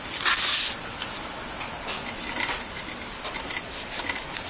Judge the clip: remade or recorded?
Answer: recorded